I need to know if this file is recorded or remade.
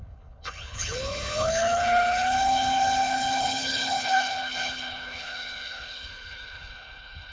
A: remade